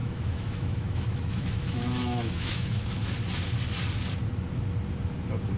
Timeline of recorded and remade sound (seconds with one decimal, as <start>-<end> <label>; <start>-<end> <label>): 0.0-3.0 remade; 3.0-5.6 recorded